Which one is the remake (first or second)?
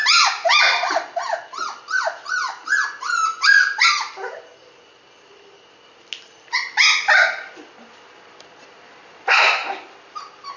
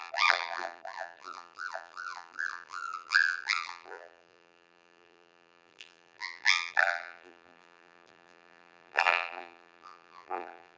second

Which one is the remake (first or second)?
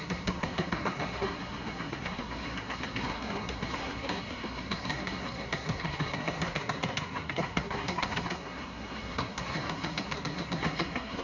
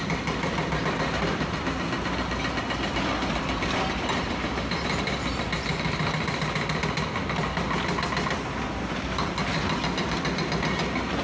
first